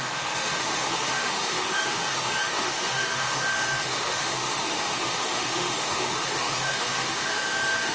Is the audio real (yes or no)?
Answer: no